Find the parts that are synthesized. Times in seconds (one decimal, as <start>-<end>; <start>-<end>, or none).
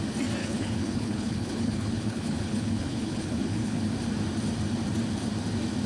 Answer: 0.4-3.9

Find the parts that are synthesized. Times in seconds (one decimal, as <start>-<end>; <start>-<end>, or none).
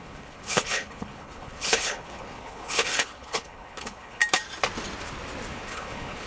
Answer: 0.0-4.2; 5.5-6.3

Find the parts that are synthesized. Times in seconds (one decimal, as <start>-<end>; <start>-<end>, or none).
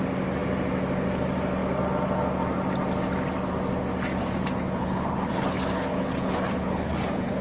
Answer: 4.8-7.4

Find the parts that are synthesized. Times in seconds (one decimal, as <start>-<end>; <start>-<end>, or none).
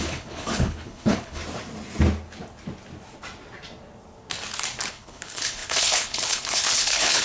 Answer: 0.0-1.4; 4.9-7.2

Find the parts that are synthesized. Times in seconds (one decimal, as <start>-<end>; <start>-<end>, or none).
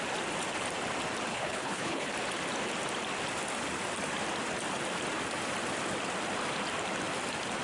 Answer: 1.3-2.1